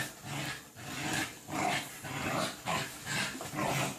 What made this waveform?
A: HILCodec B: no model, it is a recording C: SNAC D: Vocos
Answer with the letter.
B